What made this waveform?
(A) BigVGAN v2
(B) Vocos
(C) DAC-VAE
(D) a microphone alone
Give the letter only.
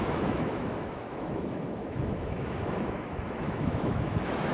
C